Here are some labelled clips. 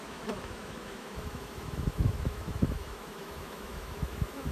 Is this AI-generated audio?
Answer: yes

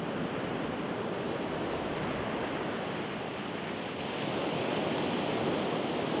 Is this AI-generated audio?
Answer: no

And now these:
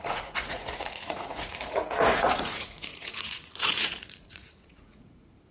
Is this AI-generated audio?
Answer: yes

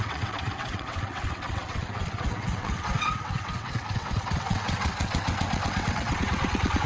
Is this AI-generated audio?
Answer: yes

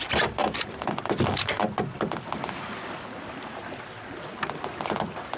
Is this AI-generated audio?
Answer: no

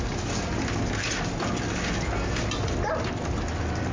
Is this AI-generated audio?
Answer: no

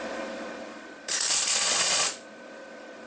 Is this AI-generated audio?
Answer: yes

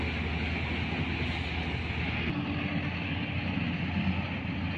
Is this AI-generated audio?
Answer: no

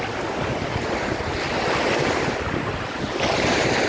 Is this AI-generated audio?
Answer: no